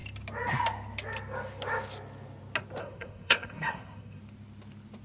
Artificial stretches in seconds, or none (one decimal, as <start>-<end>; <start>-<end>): 2.8-4.2